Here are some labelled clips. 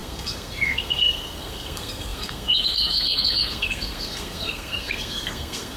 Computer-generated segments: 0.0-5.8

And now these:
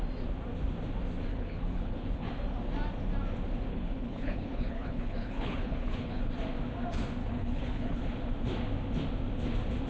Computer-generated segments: 1.3-2.3; 3.7-6.3; 7.2-8.0

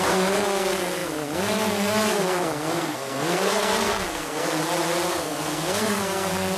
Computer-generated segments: 0.0-4.6; 5.1-6.6

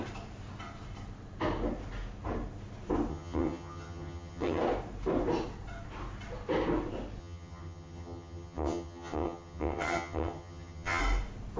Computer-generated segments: 3.1-4.6; 7.2-11.0

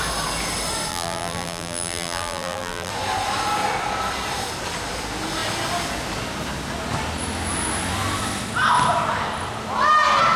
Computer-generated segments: 0.9-2.9

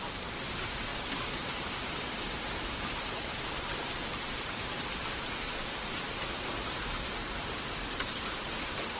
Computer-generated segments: 0.0-9.0

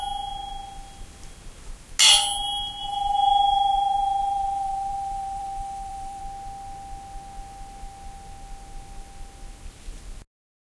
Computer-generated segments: 2.8-6.2